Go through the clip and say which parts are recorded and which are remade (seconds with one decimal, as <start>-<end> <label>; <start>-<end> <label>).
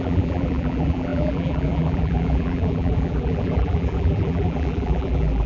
0.0-5.5 remade